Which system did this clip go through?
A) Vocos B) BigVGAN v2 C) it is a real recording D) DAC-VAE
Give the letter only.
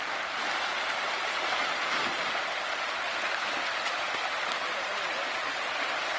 C